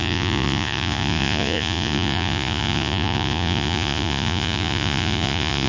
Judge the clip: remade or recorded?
remade